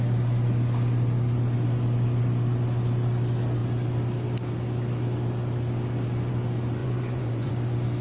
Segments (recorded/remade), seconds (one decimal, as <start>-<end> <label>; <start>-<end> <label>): 0.0-6.8 recorded; 6.8-7.5 remade; 7.5-8.0 recorded